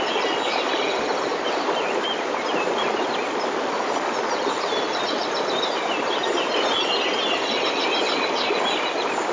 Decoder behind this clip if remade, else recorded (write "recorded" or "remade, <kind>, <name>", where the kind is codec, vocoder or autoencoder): recorded